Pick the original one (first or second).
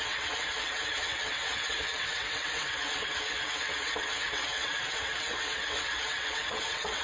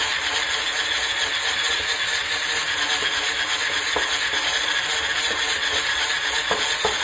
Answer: second